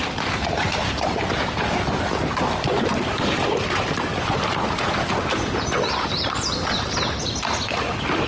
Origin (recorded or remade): recorded